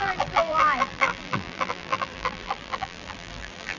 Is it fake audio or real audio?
fake